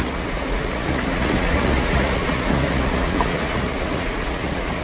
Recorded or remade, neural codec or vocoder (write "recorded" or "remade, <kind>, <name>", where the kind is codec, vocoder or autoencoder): remade, vocoder, Vocos